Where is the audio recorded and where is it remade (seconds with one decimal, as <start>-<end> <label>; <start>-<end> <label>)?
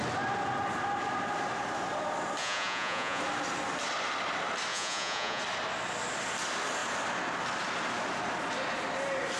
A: 0.0-2.4 recorded; 2.4-3.2 remade; 3.2-4.7 recorded; 4.7-5.4 remade; 5.4-9.4 recorded